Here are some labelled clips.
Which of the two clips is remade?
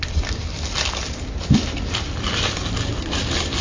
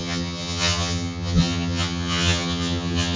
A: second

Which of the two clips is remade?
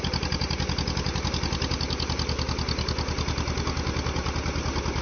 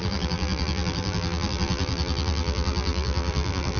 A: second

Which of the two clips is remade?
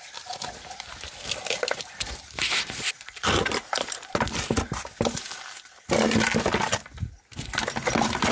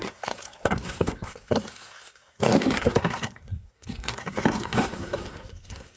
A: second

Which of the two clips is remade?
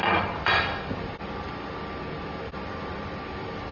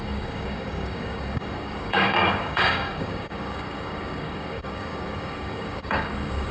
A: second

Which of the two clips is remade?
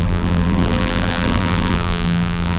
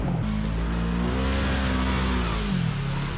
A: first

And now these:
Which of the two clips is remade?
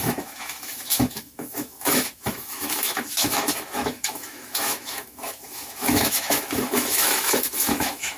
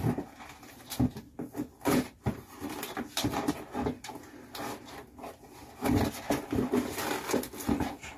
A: first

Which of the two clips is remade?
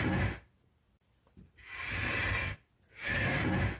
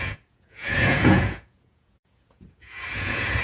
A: second